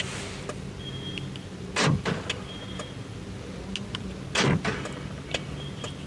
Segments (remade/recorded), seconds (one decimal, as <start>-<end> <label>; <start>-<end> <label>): 0.0-6.1 recorded